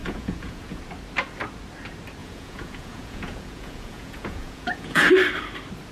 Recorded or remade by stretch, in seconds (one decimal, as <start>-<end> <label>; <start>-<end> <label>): 0.0-0.8 remade; 0.8-2.2 recorded; 2.2-5.1 remade; 5.1-5.9 recorded